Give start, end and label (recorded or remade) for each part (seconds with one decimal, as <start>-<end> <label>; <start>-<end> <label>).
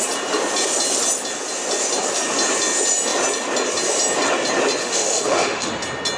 0.0-4.8 recorded; 4.8-5.7 remade; 5.7-6.2 recorded